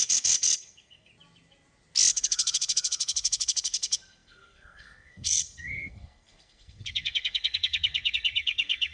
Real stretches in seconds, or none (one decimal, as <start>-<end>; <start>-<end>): 1.1-2.1